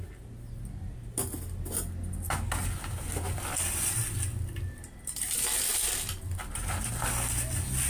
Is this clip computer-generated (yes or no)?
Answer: no